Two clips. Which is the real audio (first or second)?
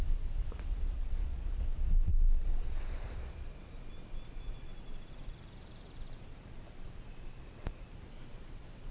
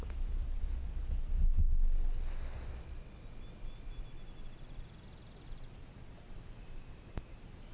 second